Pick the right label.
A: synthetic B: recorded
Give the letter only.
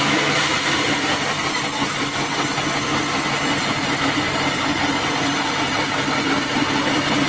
B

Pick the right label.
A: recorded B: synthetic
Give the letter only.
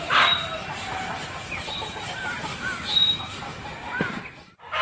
A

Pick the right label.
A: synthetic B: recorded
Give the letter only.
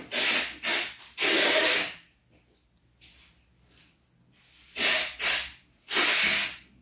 B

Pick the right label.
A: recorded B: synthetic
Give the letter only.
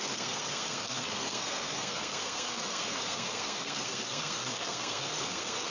B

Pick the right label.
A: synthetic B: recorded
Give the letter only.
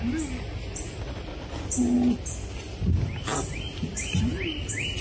B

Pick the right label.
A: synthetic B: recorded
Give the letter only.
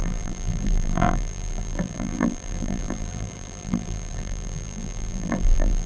A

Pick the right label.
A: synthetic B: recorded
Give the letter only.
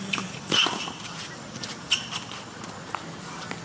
B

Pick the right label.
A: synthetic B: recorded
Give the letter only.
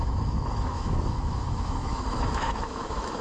A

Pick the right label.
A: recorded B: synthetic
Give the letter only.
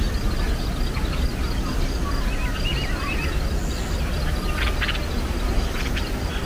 A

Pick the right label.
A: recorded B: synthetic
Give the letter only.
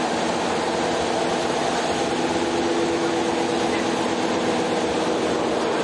A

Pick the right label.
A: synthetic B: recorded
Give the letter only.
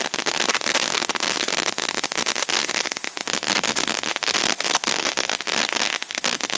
A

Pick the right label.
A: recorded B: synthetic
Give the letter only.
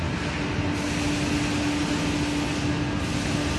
A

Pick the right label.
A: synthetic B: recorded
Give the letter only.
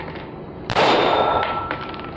A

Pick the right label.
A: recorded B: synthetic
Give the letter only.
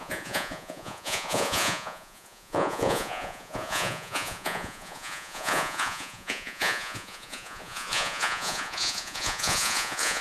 B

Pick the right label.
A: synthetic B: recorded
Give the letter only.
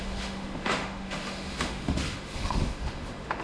A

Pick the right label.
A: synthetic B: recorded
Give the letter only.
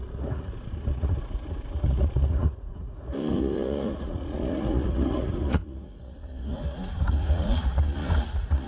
A